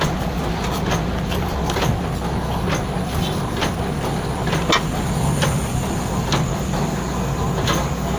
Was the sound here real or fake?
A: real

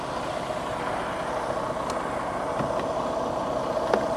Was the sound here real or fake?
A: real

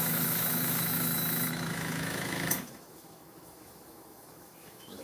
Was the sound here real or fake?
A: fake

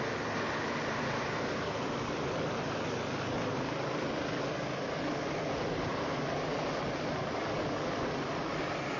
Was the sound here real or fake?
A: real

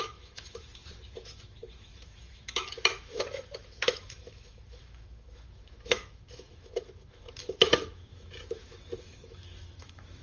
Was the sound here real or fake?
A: fake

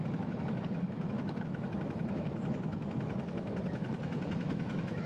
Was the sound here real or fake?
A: fake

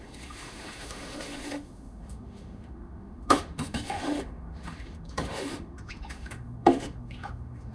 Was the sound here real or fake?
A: fake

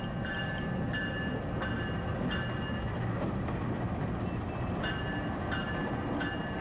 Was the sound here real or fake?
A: real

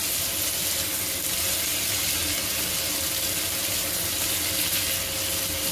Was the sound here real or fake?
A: real